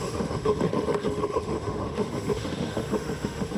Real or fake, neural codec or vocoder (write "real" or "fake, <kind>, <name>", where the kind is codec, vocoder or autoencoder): fake, autoencoder, DAC-VAE